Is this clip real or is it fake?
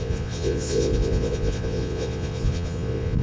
fake